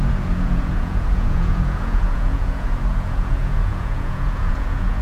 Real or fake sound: fake